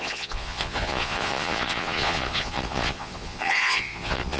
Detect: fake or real fake